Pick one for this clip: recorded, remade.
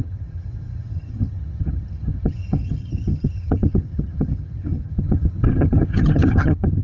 remade